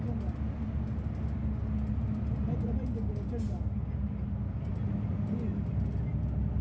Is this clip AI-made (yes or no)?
no